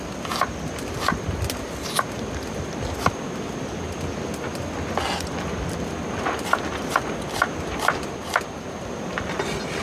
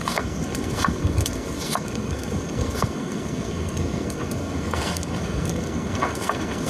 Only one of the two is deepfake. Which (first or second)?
second